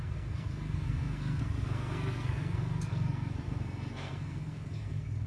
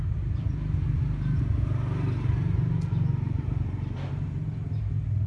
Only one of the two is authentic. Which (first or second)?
second